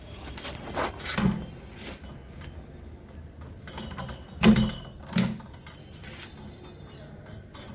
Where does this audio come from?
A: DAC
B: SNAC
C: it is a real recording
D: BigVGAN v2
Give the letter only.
C